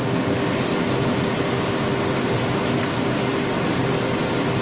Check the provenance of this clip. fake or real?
real